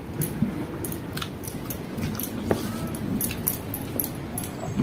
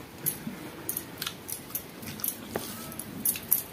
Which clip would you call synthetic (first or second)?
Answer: second